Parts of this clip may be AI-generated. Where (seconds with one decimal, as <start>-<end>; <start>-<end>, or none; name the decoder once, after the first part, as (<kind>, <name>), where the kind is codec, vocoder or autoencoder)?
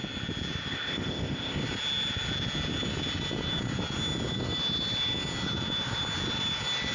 0.7-1.6 (codec, ZipCodec)